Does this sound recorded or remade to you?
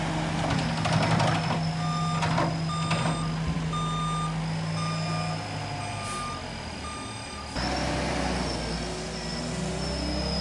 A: recorded